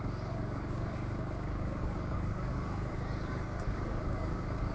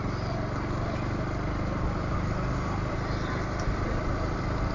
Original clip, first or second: second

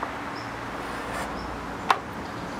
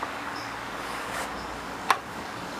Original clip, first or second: first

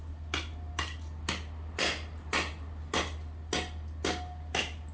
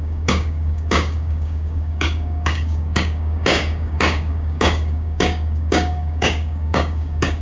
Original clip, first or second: first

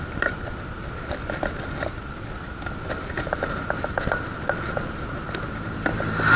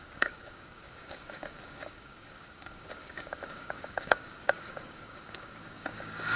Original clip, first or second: first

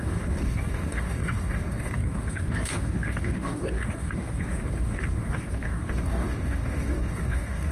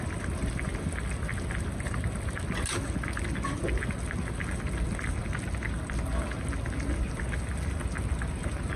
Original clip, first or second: second